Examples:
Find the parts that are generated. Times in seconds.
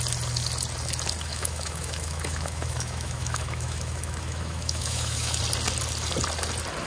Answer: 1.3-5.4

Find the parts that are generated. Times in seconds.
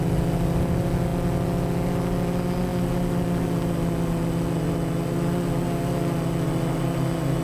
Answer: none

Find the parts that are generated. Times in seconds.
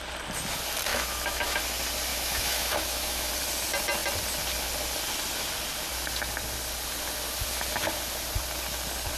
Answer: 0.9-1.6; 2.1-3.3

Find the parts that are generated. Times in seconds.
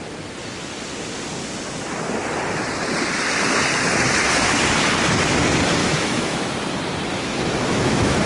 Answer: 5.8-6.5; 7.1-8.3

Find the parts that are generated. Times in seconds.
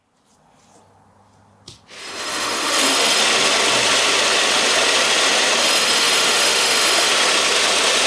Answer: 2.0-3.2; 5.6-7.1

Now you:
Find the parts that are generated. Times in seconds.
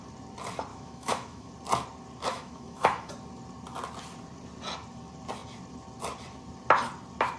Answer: 0.7-1.5; 2.3-3.1